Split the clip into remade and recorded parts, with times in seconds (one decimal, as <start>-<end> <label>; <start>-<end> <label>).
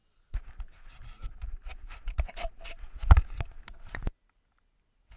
0.0-1.0 recorded; 1.0-3.6 remade; 3.6-5.2 recorded